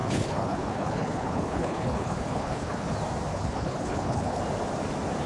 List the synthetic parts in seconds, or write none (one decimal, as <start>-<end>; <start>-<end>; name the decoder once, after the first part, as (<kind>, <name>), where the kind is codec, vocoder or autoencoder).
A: 0.0-2.9 (codec, HILCodec); 3.3-4.4